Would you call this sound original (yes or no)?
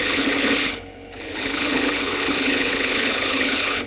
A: no